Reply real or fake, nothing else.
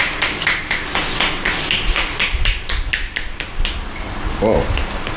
real